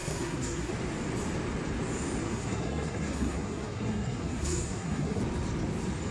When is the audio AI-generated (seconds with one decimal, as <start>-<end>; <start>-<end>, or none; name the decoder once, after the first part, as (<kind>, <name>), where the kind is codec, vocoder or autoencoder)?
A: 0.0-0.7 (codec, SNAC); 2.2-5.2